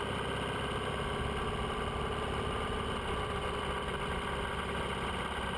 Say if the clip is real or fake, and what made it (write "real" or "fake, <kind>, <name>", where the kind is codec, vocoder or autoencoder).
real